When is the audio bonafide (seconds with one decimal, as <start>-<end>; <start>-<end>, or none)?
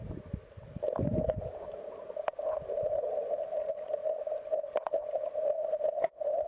0.0-3.6; 4.2-6.5